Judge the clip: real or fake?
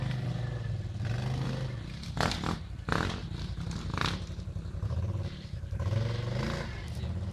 real